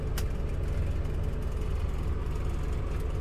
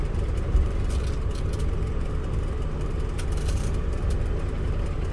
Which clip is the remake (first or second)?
second